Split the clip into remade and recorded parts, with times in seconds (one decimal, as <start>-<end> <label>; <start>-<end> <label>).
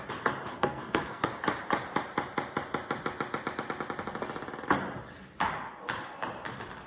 0.0-0.5 recorded; 0.5-1.3 remade; 1.3-6.9 recorded